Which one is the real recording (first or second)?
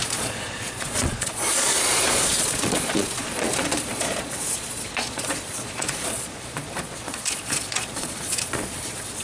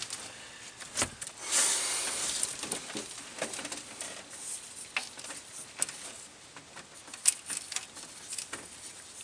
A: second